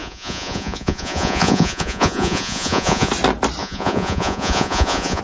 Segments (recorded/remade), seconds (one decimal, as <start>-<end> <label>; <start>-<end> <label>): 0.0-3.1 remade; 3.1-3.6 recorded; 3.6-5.2 remade